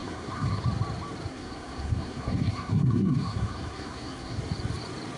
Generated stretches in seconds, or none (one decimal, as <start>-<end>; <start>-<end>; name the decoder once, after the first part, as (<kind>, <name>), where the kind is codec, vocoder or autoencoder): 0.0-0.6 (codec, SNAC); 1.3-4.4